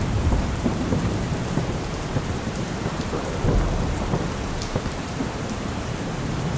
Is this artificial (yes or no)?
yes